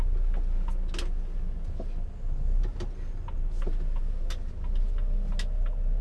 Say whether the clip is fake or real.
real